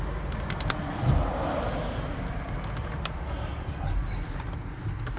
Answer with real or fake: real